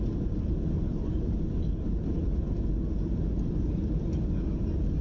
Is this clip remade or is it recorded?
recorded